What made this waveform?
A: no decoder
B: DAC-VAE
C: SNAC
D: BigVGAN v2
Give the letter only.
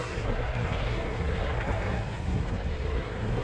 C